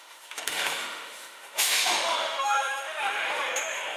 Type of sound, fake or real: fake